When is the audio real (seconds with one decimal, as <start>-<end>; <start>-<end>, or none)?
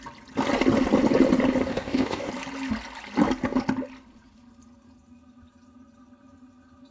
0.0-1.7; 2.3-6.9